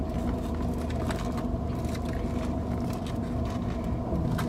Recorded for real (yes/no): yes